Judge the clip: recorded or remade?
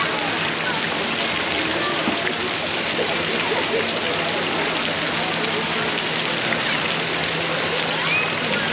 recorded